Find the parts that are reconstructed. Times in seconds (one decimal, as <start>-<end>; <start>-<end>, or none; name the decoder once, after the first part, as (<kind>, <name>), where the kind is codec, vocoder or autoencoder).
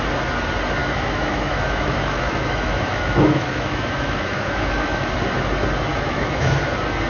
0.8-5.1 (autoencoder, DAC-VAE); 5.9-6.5